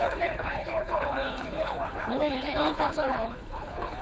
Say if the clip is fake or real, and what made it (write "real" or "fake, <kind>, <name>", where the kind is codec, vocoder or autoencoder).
fake, codec, HILCodec